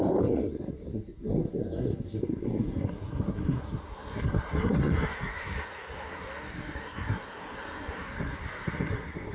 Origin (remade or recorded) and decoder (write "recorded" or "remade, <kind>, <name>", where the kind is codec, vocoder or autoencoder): remade, codec, SNAC